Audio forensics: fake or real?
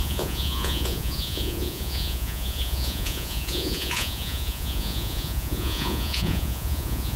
fake